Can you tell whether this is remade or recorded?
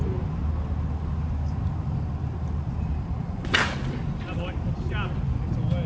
recorded